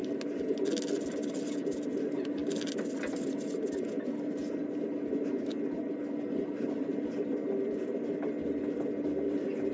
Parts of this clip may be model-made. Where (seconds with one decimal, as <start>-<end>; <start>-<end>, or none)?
none